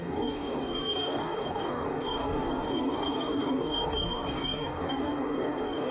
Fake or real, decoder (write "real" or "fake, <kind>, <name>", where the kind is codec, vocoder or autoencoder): fake, codec, DAC